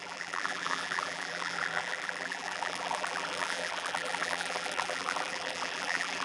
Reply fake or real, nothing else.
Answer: fake